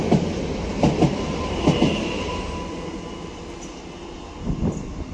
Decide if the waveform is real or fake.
real